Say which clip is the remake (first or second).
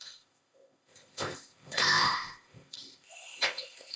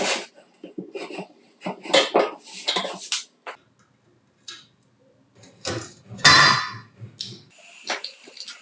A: first